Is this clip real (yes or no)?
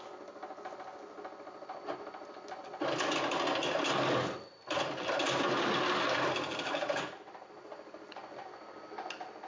yes